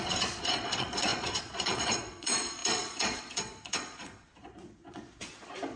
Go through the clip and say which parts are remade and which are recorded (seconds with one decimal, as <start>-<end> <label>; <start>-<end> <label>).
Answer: 0.0-5.8 remade